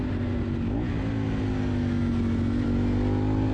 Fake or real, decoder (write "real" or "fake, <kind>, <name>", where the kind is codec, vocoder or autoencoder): real